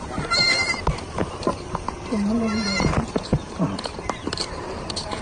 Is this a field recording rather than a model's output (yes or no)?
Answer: no